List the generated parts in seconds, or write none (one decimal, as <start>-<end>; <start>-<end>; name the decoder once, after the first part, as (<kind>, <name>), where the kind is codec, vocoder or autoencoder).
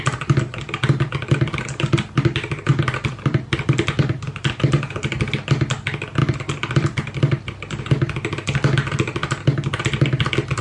2.7-4.4 (vocoder, BigVGAN v2); 6.2-7.8